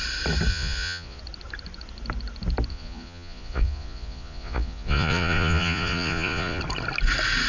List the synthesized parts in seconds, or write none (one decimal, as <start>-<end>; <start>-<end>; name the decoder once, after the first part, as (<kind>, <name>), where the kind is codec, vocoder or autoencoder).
0.5-1.2 (vocoder, Vocos); 2.7-6.6